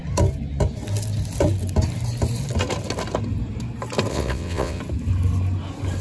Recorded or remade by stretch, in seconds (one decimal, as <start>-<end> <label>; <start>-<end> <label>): 0.0-4.1 recorded; 4.1-4.8 remade; 4.8-6.0 recorded